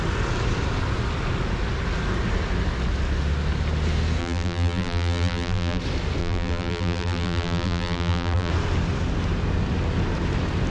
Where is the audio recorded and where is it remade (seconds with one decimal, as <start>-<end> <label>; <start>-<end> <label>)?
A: 0.0-4.2 recorded; 4.2-5.8 remade; 5.8-6.2 recorded; 6.2-8.5 remade; 8.5-10.7 recorded